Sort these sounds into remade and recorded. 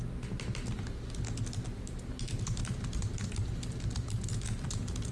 recorded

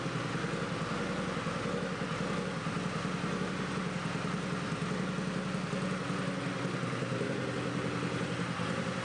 recorded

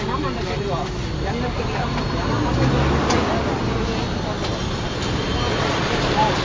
recorded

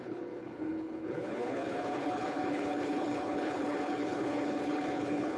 remade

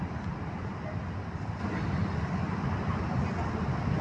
recorded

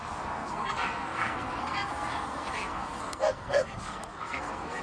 remade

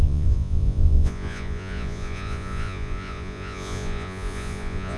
remade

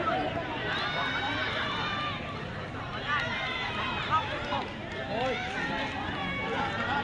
recorded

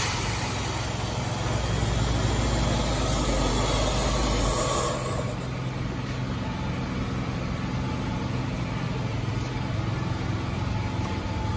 recorded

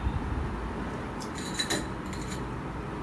remade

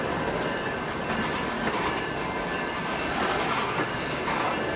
recorded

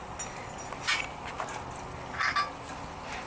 recorded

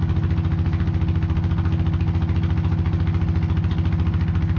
recorded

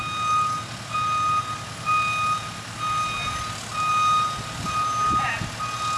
recorded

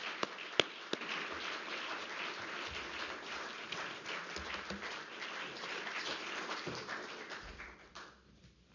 recorded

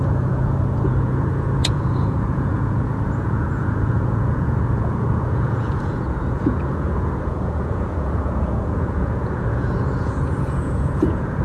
remade